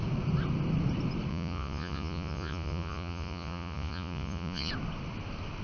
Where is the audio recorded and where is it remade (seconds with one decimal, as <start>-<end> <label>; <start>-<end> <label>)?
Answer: 0.0-1.3 recorded; 1.3-4.7 remade; 4.7-5.6 recorded